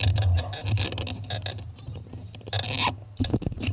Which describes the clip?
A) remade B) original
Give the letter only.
B